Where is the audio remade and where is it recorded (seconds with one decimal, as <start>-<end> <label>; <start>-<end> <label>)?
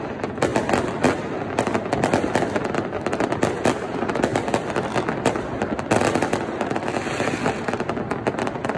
0.0-8.8 recorded